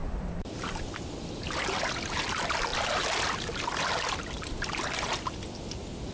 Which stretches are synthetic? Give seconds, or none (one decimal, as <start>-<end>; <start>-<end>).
0.0-0.8; 2.7-6.1